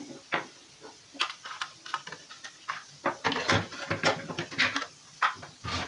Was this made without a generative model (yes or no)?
yes